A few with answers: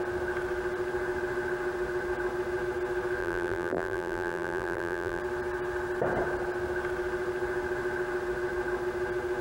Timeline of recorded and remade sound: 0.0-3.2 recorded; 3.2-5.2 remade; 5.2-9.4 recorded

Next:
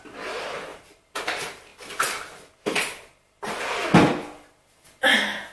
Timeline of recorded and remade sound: 0.0-0.7 recorded; 0.7-1.2 remade; 1.2-5.5 recorded